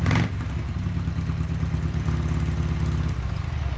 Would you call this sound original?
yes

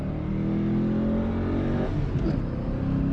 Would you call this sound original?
yes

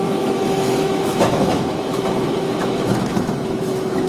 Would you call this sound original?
no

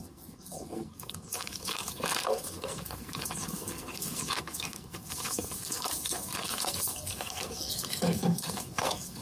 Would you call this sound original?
no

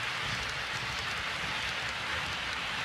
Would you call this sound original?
yes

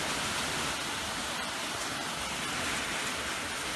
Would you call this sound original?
yes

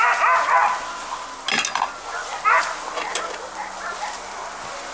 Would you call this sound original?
yes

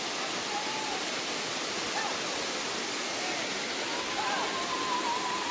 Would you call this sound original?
yes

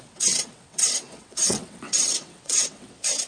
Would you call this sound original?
no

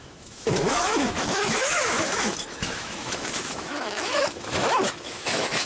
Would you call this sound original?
no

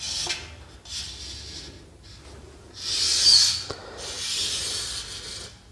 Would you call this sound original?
yes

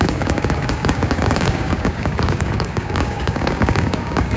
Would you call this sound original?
no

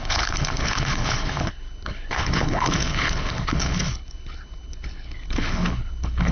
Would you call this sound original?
no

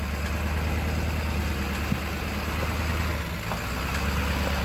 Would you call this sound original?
yes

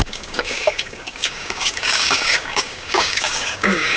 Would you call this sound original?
no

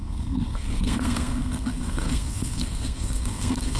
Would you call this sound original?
no